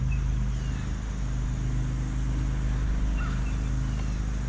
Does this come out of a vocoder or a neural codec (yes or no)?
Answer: no